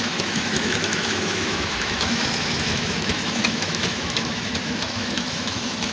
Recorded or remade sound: remade